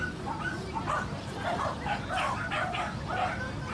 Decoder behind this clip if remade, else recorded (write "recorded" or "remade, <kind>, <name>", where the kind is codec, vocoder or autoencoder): remade, vocoder, BigVGAN v2